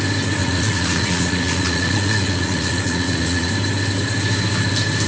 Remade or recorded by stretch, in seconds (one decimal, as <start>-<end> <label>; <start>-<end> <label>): 0.0-0.4 recorded; 0.4-3.5 remade; 3.5-5.1 recorded